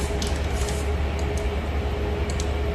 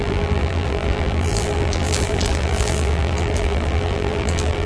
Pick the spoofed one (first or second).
second